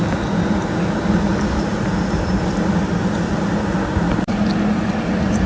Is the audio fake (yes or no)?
no